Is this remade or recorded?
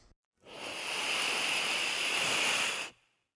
recorded